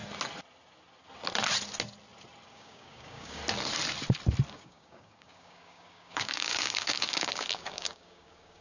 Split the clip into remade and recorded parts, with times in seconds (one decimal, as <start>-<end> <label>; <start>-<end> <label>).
0.0-2.5 recorded; 2.5-3.4 remade; 3.4-4.5 recorded; 4.5-8.6 remade